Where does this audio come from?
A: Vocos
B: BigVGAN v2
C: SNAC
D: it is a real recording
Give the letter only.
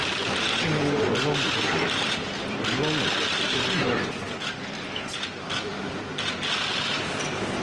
D